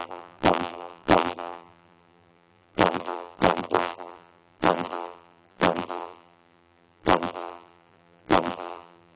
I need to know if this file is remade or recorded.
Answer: remade